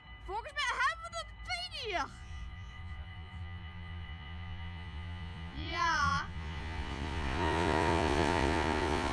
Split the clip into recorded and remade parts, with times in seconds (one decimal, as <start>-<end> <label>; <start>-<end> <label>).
0.0-2.1 recorded; 2.1-9.1 remade